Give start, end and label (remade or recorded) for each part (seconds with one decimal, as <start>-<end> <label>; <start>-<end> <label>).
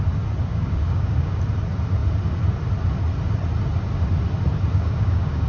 0.0-0.5 recorded; 0.5-1.4 remade; 1.4-4.7 recorded; 4.7-5.5 remade